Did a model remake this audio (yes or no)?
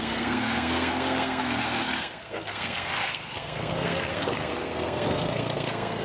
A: yes